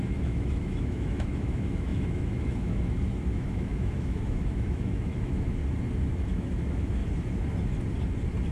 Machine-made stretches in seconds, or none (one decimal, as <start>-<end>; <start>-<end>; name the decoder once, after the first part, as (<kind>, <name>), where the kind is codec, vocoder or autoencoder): 0.0-5.6 (autoencoder, DAC-VAE); 6.1-7.0